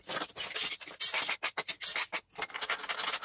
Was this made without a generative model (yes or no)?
yes